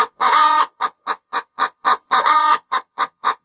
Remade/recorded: remade